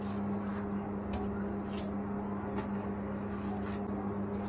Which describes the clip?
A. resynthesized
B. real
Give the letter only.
B